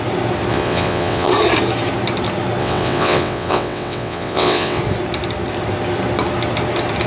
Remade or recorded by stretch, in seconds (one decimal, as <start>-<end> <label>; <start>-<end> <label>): 0.0-0.5 recorded; 0.5-1.3 remade; 1.3-2.6 recorded; 2.6-4.8 remade; 4.8-7.1 recorded